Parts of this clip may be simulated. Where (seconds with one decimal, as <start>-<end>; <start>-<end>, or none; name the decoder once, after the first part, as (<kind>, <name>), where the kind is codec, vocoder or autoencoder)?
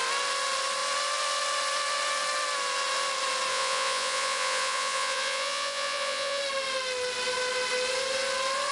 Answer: 3.5-6.4 (vocoder, Vocos)